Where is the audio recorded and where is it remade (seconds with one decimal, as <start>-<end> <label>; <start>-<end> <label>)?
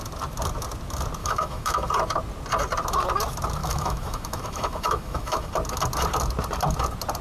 0.0-1.2 recorded; 1.2-1.9 remade; 1.9-3.6 recorded; 3.6-5.5 remade; 5.5-7.2 recorded